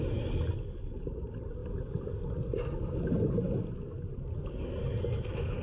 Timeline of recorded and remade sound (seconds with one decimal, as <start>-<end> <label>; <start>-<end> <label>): 0.0-5.6 recorded